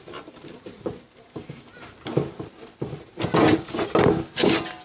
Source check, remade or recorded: recorded